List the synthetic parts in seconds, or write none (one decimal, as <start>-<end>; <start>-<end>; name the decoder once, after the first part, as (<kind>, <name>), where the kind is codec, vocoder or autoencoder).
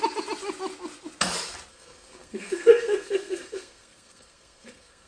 1.7-5.1 (codec, SNAC)